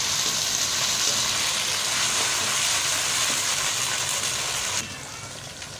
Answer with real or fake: real